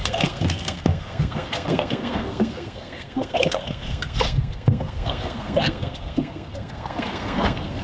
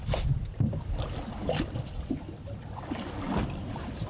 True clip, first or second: second